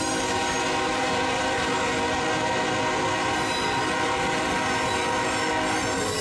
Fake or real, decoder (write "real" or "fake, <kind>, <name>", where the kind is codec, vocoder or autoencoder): real